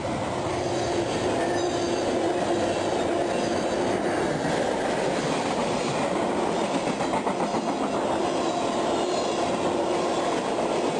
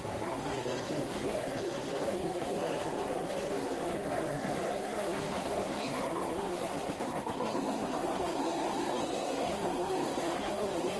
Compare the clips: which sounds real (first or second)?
first